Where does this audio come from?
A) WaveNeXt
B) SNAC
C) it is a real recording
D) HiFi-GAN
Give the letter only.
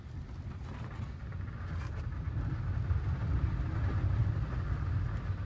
C